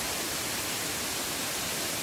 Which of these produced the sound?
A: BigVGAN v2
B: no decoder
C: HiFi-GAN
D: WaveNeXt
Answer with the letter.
B